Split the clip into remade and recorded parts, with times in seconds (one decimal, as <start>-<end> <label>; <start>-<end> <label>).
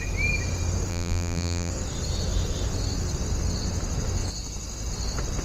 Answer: 0.0-0.9 recorded; 0.9-1.7 remade; 1.7-5.4 recorded